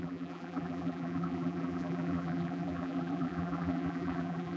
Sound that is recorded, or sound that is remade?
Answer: remade